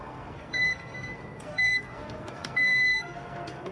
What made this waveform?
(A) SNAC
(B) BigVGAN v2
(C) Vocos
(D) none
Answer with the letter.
A